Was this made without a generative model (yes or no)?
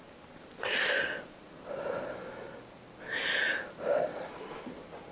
yes